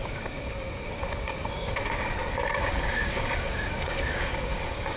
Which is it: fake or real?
fake